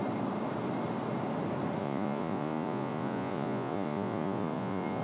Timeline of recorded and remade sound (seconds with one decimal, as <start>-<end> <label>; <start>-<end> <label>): 0.0-1.8 recorded; 1.8-5.0 remade